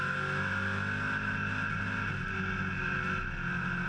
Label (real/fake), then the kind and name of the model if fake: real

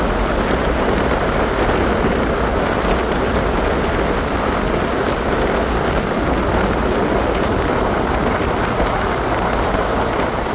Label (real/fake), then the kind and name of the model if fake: real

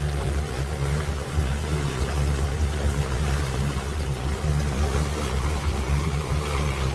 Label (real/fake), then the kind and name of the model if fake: fake, vocoder, Vocos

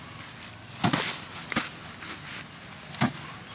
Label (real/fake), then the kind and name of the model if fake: real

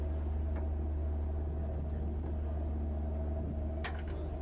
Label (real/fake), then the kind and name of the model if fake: real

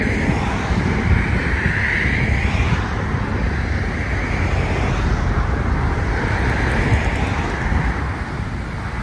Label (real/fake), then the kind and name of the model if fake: real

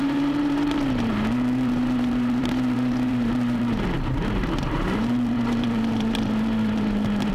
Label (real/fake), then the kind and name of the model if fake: fake, vocoder, BigVGAN v2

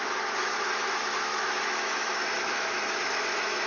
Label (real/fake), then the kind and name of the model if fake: fake, autoencoder, DAC-VAE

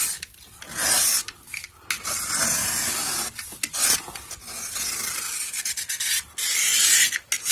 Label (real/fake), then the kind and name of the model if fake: real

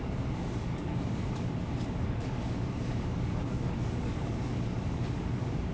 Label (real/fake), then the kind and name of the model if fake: fake, codec, DAC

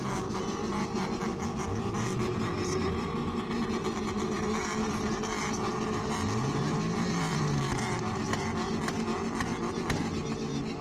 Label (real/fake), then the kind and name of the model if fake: real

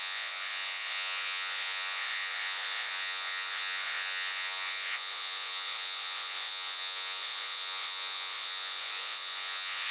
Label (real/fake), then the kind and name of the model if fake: fake, vocoder, Vocos